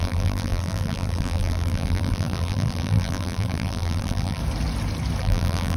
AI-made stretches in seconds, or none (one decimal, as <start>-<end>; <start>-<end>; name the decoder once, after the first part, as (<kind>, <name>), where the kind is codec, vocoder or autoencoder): 0.0-4.4 (vocoder, BigVGAN v2); 5.2-5.8